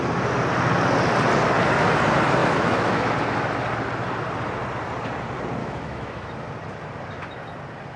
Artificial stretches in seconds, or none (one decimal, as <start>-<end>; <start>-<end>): 2.4-3.1; 5.6-6.3

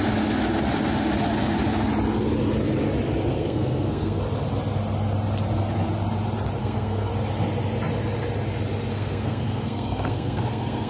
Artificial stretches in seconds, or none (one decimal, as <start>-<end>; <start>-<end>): 3.3-4.2; 6.6-7.1; 8.9-10.9